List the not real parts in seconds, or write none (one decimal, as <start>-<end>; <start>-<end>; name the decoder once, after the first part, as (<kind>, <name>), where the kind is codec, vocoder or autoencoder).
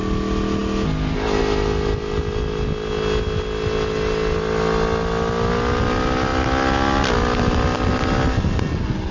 none